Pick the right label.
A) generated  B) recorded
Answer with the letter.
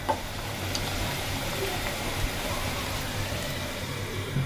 A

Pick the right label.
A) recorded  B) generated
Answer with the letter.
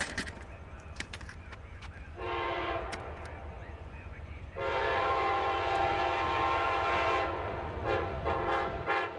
B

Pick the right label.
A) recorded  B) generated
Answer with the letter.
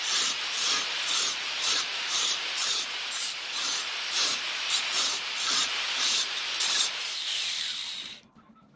B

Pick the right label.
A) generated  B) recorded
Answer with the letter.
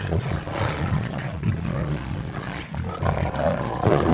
A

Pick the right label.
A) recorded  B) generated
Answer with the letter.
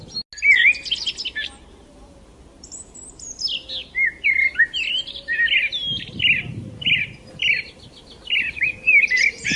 A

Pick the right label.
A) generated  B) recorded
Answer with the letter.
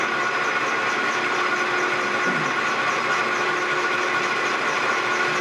B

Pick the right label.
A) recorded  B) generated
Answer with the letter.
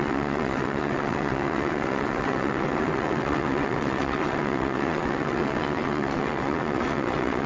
B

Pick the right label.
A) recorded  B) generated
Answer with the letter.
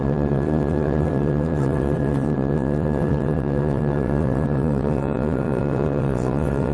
B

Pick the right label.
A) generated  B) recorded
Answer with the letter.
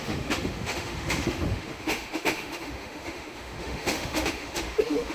A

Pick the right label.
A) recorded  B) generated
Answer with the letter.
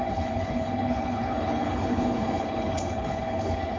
B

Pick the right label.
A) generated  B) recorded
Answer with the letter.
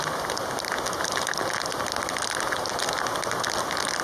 B